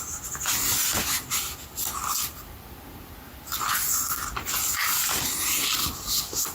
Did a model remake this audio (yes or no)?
no